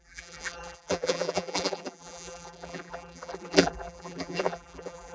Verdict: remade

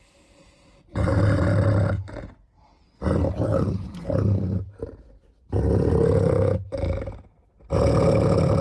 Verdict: recorded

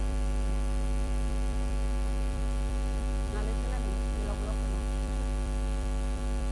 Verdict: remade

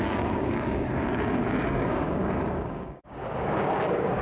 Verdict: remade